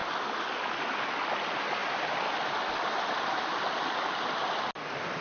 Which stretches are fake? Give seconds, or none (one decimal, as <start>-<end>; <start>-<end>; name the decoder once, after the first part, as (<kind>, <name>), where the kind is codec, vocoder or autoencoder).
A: none

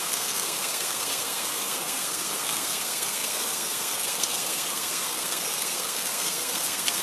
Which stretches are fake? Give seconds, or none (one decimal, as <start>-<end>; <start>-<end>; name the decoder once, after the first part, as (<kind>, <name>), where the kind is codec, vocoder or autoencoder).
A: 0.0-7.0 (codec, SNAC)

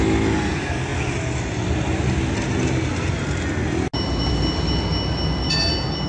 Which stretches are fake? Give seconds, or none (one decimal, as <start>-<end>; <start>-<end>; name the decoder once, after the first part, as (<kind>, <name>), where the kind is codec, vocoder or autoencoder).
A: none

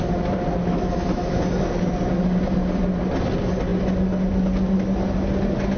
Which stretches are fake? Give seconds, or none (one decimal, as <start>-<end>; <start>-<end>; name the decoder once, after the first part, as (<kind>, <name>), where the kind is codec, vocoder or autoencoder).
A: 0.6-1.4 (autoencoder, DAC-VAE)

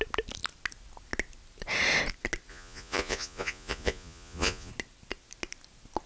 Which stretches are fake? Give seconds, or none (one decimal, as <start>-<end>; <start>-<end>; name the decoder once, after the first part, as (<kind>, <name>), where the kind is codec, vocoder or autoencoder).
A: 2.5-4.7 (vocoder, Vocos)